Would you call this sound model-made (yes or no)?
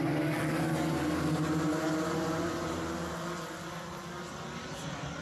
no